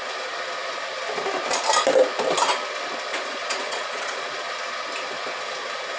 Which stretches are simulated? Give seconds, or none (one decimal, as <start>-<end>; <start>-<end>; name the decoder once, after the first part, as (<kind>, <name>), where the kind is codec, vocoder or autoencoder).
3.1-4.3 (vocoder, Vocos)